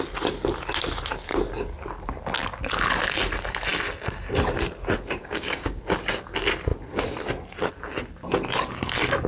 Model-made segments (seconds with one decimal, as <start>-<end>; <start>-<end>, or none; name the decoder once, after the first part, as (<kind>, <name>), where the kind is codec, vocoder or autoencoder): 5.2-5.8 (codec, DAC)